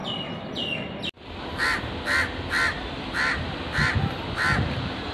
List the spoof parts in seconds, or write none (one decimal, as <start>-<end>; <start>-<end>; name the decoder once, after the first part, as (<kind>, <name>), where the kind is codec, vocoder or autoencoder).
none